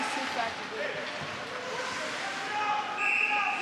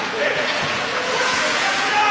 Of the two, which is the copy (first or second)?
second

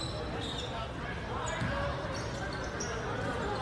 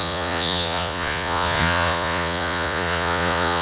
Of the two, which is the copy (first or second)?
second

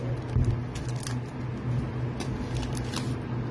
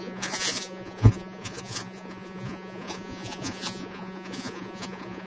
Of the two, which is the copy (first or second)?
second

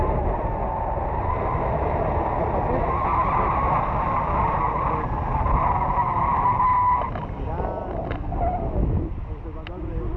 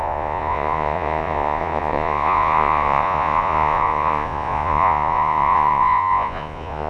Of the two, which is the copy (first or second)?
second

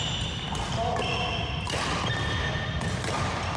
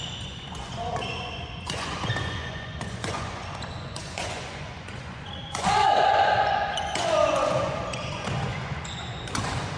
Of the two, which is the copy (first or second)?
second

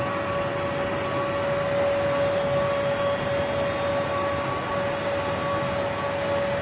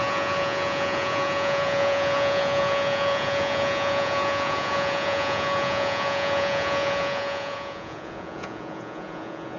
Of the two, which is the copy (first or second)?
second